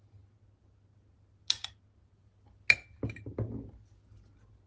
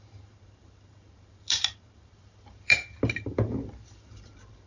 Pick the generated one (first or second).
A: second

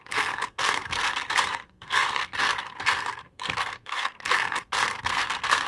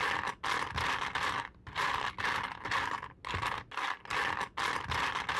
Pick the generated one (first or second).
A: first